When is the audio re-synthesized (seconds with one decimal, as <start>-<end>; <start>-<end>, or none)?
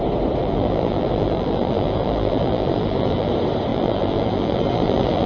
0.4-3.3; 3.7-5.3